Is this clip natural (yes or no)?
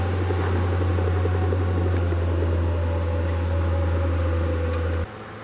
yes